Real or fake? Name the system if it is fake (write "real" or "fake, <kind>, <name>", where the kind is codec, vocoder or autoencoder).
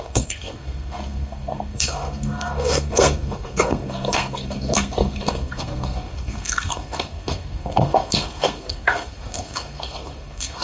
fake, codec, SNAC